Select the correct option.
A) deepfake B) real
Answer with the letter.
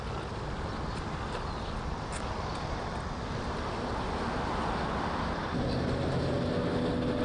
B